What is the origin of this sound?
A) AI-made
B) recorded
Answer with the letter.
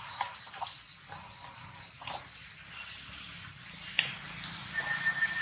B